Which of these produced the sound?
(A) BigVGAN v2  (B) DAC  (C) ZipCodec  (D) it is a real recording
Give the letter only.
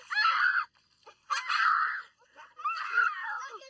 D